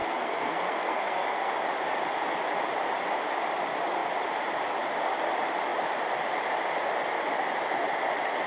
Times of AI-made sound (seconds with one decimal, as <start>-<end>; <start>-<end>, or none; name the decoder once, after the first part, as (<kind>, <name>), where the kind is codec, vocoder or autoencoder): 0.0-1.5 (codec, SNAC)